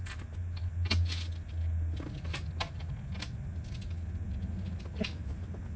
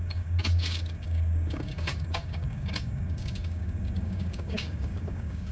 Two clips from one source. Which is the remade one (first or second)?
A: second